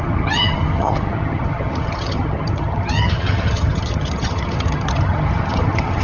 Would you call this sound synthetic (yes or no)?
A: yes